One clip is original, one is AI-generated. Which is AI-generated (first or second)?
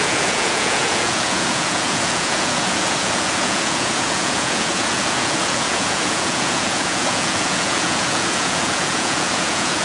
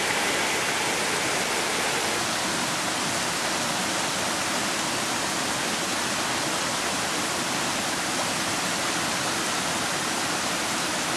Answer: first